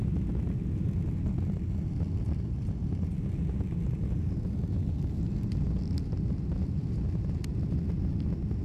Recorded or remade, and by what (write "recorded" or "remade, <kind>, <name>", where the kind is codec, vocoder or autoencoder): recorded